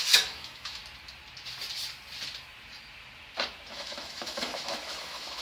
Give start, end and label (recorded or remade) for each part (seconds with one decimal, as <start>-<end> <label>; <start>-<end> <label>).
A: 0.0-0.8 remade; 0.8-3.7 recorded; 3.7-5.4 remade